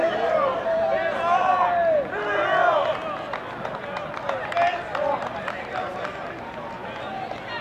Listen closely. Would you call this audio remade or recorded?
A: recorded